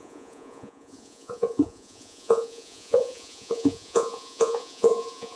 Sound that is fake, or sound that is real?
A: fake